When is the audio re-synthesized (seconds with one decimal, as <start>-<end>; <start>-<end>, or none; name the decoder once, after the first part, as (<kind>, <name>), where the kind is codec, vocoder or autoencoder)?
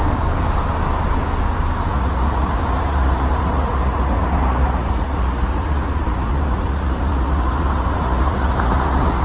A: 1.9-9.2 (vocoder, Vocos)